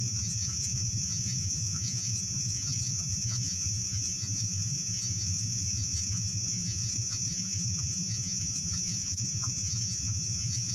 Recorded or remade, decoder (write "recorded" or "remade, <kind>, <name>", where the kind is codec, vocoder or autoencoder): remade, vocoder, Vocos